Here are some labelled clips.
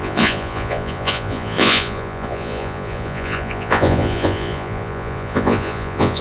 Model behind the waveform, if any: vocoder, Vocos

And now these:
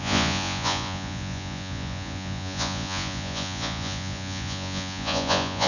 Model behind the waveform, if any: vocoder, Vocos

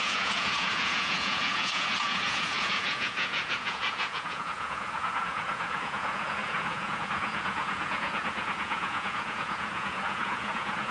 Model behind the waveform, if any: vocoder, Vocos